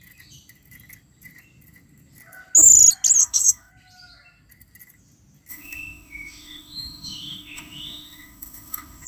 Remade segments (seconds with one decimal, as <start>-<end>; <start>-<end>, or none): 3.2-3.7; 5.5-9.1